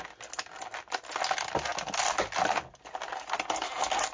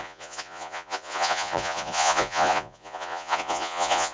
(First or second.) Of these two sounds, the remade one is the second